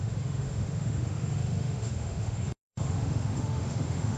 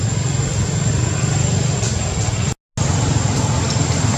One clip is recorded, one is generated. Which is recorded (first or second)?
second